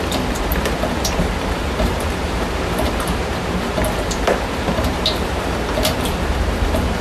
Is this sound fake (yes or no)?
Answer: yes